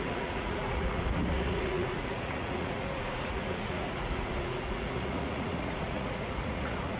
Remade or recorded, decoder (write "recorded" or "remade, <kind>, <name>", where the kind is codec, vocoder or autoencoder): remade, vocoder, Vocos